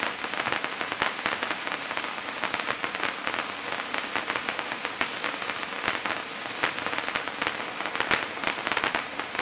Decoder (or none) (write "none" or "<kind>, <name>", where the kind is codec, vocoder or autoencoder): none